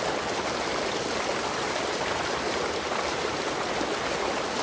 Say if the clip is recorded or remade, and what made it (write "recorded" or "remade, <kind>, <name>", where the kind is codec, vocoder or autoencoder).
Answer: recorded